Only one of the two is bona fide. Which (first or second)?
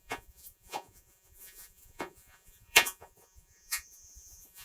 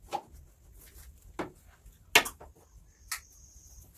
second